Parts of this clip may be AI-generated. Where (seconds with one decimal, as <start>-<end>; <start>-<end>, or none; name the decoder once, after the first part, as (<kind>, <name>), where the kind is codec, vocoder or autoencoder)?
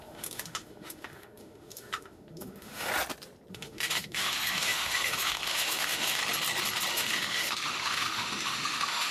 0.0-2.9 (autoencoder, DAC-VAE); 3.5-6.2; 6.9-9.1